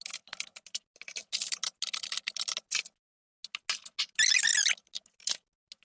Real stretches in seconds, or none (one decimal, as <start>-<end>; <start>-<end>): 0.0-5.8